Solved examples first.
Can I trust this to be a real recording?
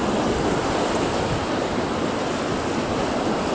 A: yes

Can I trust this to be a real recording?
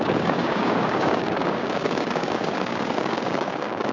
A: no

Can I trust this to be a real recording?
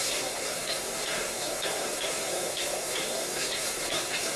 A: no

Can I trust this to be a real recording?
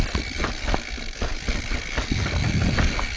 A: yes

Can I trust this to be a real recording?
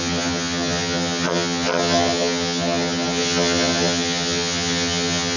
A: no